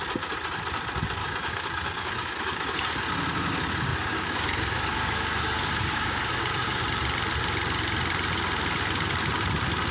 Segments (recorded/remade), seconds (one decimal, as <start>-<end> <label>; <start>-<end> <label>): 0.0-1.2 recorded; 1.2-3.0 remade; 3.0-3.9 recorded; 3.9-6.8 remade; 6.8-9.9 recorded